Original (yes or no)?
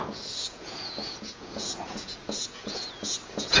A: no